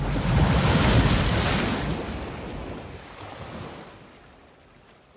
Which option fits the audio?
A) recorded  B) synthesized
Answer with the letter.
A